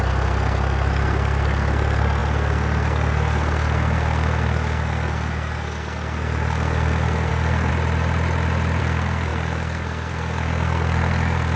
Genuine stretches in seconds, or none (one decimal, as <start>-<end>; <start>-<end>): 7.7-8.8